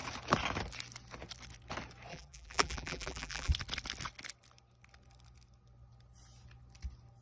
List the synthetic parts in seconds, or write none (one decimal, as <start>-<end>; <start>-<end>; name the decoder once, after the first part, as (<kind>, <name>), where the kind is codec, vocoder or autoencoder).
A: 2.1-3.5 (vocoder, BigVGAN v2)